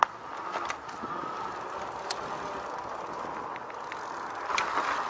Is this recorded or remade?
recorded